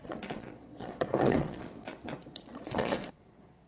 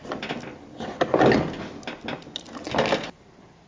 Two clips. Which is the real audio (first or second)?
second